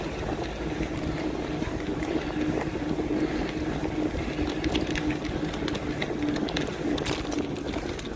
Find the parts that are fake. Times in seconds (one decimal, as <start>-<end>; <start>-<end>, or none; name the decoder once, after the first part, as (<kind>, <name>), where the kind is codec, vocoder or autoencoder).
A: none